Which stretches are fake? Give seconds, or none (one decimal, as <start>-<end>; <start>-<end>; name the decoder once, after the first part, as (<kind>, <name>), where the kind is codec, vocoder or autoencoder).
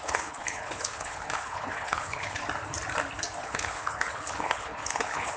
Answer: 0.0-2.4 (codec, HILCodec); 3.4-5.4